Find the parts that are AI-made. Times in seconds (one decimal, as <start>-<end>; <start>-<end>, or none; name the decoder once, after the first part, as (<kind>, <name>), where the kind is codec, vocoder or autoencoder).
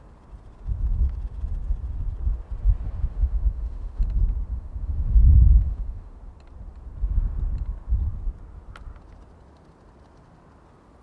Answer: 3.1-4.0 (autoencoder, DAC-VAE); 4.5-6.2